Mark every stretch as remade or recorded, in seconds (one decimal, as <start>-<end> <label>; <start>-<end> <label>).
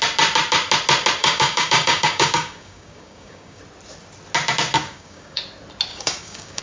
0.0-1.2 recorded; 1.2-3.6 remade; 3.6-4.8 recorded; 4.8-5.4 remade; 5.4-5.9 recorded; 5.9-6.6 remade